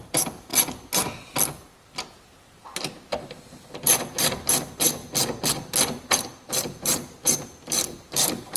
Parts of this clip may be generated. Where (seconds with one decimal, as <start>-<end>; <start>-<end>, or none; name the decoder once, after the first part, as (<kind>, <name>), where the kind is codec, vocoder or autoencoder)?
0.0-0.5 (vocoder, BigVGAN v2); 1.8-5.0; 6.1-8.6